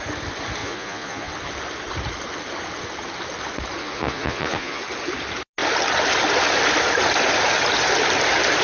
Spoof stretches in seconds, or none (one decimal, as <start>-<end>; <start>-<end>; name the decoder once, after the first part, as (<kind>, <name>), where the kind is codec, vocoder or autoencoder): 0.6-1.3 (vocoder, Vocos); 3.8-4.8